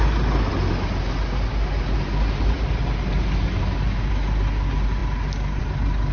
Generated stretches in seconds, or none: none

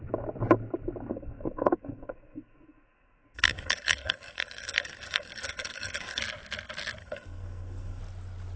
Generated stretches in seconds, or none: 1.1-6.2; 7.0-8.0

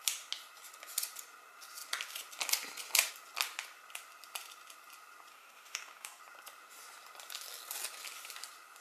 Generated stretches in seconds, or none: 5.3-6.2

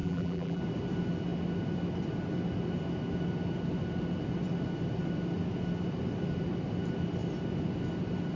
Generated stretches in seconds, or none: 0.0-0.6

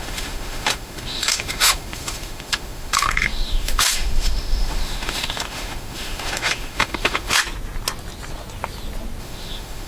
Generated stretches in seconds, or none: 0.0-7.4; 9.2-9.9